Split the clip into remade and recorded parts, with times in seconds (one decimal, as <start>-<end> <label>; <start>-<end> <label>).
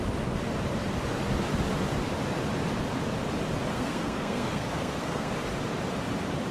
0.0-3.7 recorded; 3.7-5.3 remade; 5.3-6.5 recorded